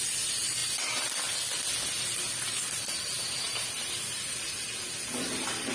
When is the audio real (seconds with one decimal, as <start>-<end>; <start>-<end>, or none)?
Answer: 0.0-5.7